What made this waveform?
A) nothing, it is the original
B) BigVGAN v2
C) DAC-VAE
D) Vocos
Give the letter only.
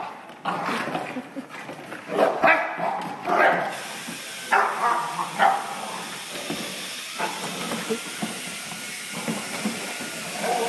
A